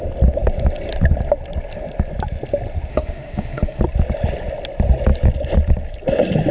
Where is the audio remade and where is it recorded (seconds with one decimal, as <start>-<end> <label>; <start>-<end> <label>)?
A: 0.0-2.9 recorded; 2.9-3.8 remade; 3.8-6.5 recorded